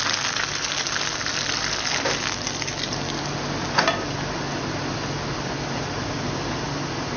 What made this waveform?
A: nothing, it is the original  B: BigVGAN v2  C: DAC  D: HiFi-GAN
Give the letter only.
A